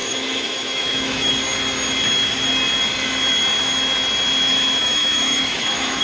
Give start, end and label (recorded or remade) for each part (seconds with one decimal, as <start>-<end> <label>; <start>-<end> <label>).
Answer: 0.0-1.3 remade; 1.3-4.8 recorded; 4.8-6.0 remade